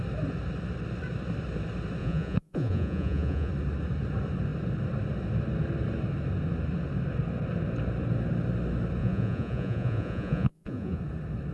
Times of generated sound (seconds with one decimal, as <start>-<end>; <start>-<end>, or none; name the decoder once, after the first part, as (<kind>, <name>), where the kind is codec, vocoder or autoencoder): 2.0-3.5 (vocoder, Vocos); 9.0-11.0